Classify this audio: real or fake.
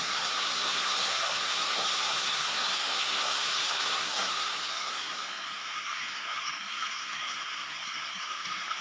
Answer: fake